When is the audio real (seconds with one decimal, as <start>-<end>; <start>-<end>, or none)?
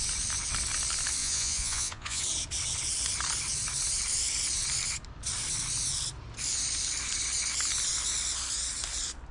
0.0-1.2; 2.2-9.3